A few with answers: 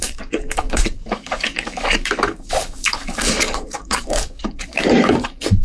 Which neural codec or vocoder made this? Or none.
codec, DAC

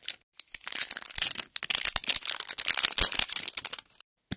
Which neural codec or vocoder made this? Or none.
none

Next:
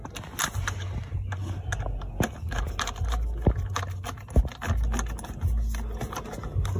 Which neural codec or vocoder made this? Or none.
none